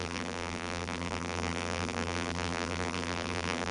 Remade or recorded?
remade